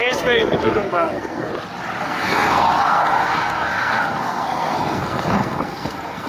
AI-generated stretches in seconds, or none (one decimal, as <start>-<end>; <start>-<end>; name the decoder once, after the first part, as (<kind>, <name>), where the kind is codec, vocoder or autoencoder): 0.0-1.5 (codec, SNAC); 2.0-6.3